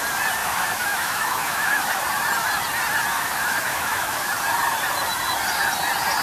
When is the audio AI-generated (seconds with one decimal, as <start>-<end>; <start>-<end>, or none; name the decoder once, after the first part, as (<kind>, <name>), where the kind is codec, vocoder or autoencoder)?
0.4-1.9 (autoencoder, DAC-VAE); 3.1-4.3

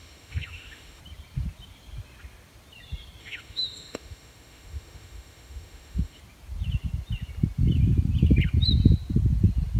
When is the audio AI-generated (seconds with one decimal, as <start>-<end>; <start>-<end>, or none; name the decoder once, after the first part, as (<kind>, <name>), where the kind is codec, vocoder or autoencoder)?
0.0-1.0 (autoencoder, DAC-VAE); 3.2-6.2

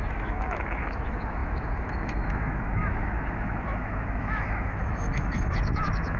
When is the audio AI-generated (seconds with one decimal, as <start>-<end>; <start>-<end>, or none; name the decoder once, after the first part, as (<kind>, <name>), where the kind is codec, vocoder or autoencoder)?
0.0-6.2 (autoencoder, DAC-VAE)

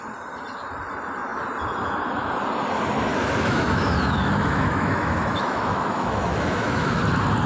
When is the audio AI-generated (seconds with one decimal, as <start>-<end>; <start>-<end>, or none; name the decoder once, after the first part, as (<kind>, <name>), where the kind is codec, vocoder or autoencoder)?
3.1-7.0 (autoencoder, DAC-VAE)